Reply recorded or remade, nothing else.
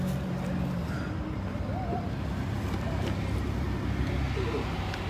recorded